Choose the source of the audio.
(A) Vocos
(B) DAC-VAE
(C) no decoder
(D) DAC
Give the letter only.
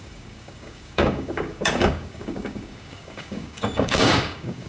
D